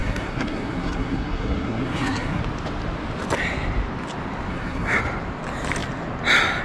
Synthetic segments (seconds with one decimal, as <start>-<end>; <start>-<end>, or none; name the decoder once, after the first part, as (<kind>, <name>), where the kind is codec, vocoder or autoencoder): 0.0-2.4 (codec, SNAC); 4.5-5.0